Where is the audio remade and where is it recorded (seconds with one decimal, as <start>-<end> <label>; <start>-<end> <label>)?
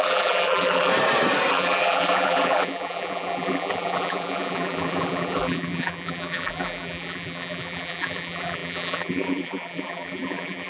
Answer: 0.0-0.9 remade; 0.9-1.5 recorded; 1.5-10.7 remade